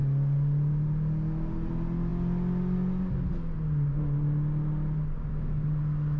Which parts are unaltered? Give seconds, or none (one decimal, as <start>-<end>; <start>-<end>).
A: 0.0-6.2